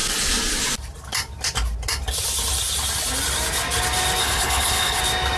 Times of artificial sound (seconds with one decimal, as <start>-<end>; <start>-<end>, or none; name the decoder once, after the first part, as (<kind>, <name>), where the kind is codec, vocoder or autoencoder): 4.2-5.0 (codec, HILCodec)